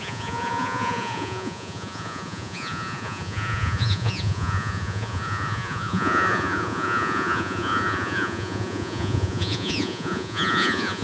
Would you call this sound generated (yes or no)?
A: yes